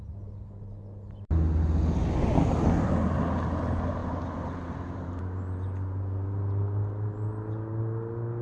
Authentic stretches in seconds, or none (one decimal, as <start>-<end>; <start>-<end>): 0.0-4.0; 5.2-8.4